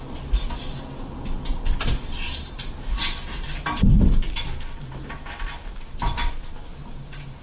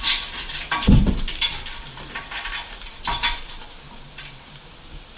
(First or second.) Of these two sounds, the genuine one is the first